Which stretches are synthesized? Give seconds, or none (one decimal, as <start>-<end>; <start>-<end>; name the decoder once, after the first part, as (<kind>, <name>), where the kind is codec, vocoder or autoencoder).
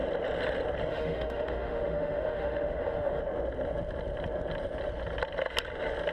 0.9-3.2 (autoencoder, DAC-VAE)